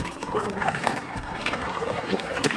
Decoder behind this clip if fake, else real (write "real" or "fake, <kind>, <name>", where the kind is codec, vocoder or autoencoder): fake, codec, SNAC